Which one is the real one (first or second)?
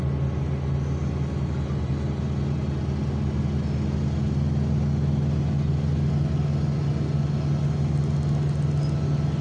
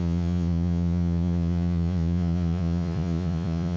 first